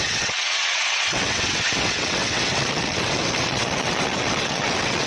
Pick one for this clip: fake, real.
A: fake